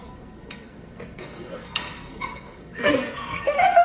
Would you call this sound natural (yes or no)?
no